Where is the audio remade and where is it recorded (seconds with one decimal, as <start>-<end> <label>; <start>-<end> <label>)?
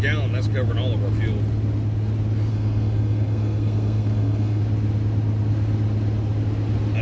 0.0-2.5 recorded; 2.5-4.6 remade; 4.6-7.0 recorded